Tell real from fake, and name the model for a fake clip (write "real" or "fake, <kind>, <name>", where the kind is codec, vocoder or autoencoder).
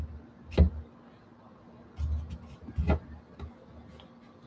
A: real